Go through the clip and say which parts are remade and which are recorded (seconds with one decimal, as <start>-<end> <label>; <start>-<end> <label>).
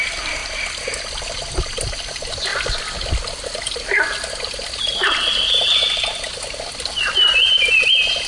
0.0-8.3 recorded